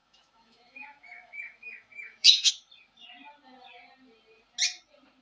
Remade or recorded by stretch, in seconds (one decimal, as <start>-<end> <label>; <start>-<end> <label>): 0.0-2.5 remade; 2.5-5.2 recorded